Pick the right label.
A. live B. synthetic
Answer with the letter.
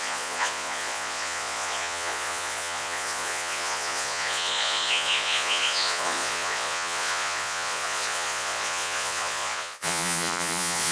B